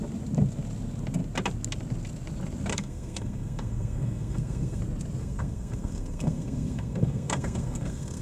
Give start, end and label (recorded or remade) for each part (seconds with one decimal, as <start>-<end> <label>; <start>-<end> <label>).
0.0-2.7 recorded; 2.7-4.8 remade; 4.8-5.2 recorded; 5.2-8.2 remade